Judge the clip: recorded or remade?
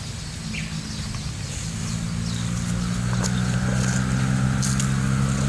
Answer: recorded